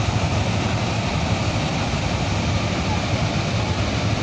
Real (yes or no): yes